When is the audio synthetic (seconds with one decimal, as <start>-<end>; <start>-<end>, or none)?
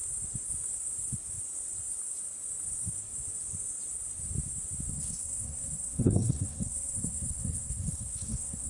4.9-8.7